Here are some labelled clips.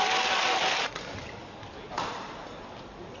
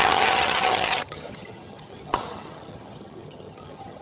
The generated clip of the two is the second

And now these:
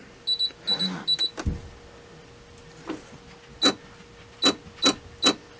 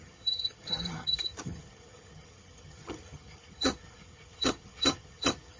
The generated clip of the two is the second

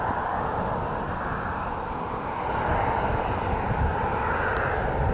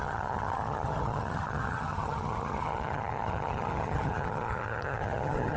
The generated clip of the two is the second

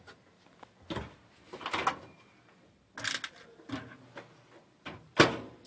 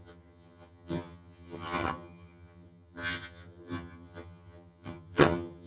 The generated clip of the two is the second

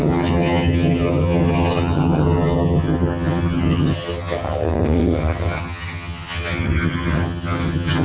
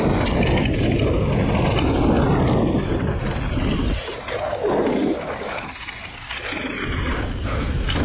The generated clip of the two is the first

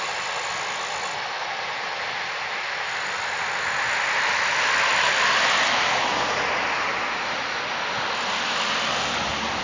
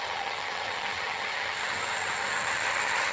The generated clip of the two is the second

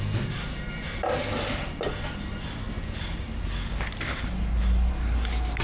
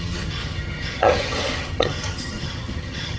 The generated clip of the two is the second